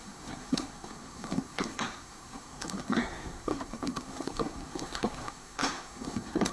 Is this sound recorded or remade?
remade